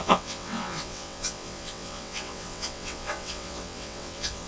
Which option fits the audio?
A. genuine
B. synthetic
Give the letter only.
B